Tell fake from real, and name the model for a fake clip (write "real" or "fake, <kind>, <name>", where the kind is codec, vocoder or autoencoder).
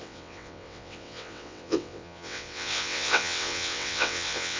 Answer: fake, vocoder, WaveNeXt